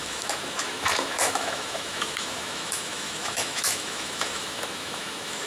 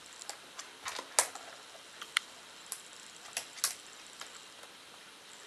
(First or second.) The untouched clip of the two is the second